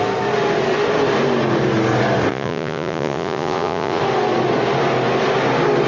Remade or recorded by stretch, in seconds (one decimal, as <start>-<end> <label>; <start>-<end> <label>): 0.0-2.3 recorded; 2.3-4.0 remade; 4.0-5.9 recorded

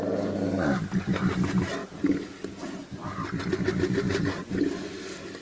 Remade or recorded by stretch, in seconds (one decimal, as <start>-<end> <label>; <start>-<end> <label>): 0.0-5.4 recorded

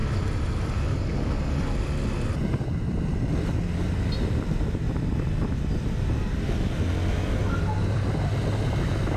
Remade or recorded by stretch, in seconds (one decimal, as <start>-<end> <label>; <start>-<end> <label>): 0.0-9.2 recorded

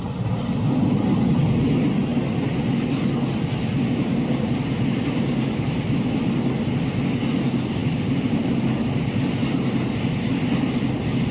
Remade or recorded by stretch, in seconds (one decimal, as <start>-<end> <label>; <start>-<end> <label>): 0.0-11.3 recorded

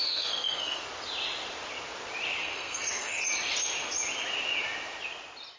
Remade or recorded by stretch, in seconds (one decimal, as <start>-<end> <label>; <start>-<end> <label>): 0.0-0.8 remade; 0.8-2.4 recorded; 2.4-3.2 remade; 3.2-5.6 recorded

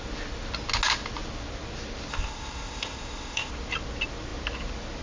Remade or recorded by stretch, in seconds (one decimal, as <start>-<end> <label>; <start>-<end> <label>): 0.0-2.1 recorded; 2.1-3.5 remade; 3.5-5.0 recorded

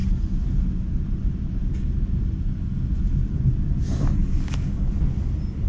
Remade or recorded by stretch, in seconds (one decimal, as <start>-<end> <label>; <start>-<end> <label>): 0.0-4.2 recorded; 4.2-4.9 remade; 4.9-5.7 recorded

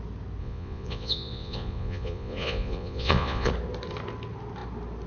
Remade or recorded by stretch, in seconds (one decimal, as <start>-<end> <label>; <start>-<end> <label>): 0.0-0.4 recorded; 0.4-3.5 remade; 3.5-5.1 recorded